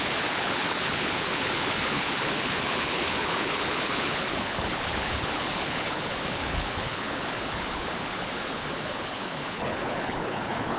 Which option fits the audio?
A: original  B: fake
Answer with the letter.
B